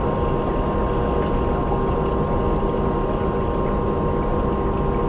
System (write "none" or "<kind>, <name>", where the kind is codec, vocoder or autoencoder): none